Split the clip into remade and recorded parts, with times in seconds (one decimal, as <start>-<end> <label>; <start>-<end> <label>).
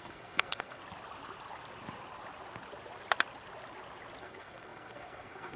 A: 0.0-0.8 remade; 0.8-4.2 recorded; 4.2-5.6 remade